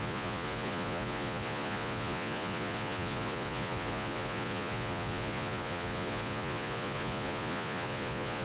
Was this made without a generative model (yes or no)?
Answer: no